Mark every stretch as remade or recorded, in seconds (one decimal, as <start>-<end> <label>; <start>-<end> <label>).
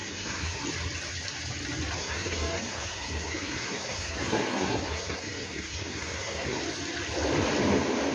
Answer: 0.0-0.6 remade; 0.6-2.0 recorded; 2.0-6.6 remade; 6.6-8.1 recorded